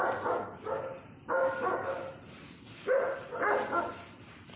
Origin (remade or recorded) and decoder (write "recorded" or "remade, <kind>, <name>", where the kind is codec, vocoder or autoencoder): recorded